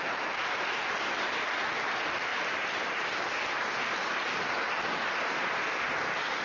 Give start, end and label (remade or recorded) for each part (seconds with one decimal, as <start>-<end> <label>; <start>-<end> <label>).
0.0-2.3 recorded; 2.3-3.3 remade; 3.3-6.4 recorded

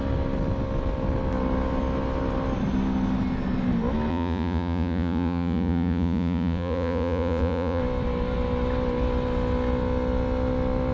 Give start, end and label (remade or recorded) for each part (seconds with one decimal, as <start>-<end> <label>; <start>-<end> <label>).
0.0-4.1 recorded; 4.1-7.8 remade; 7.8-10.9 recorded

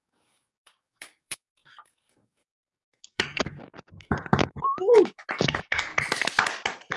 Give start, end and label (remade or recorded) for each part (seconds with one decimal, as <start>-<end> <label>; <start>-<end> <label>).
0.0-5.9 remade; 5.9-7.0 recorded

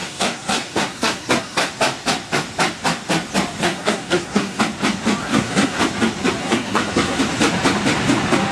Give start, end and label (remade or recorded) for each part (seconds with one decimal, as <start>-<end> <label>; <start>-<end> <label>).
0.0-1.7 remade; 1.7-3.6 recorded; 3.6-4.6 remade; 4.6-5.2 recorded; 5.2-5.8 remade; 5.8-6.4 recorded; 6.4-7.2 remade; 7.2-8.5 recorded